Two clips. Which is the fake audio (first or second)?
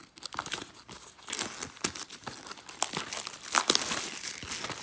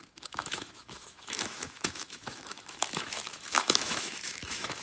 second